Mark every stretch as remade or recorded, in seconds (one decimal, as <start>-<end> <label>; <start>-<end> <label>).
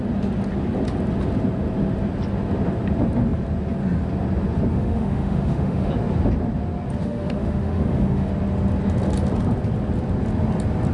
0.0-4.7 recorded; 4.7-5.9 remade; 5.9-7.0 recorded; 7.0-8.3 remade; 8.3-10.9 recorded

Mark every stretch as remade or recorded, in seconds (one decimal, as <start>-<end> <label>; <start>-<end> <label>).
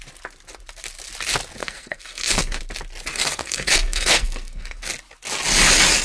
0.0-1.6 recorded; 1.6-2.6 remade; 2.6-3.1 recorded; 3.1-4.8 remade; 4.8-6.0 recorded